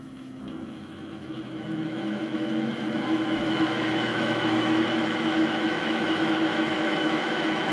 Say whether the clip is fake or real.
fake